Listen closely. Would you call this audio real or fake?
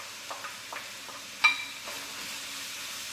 real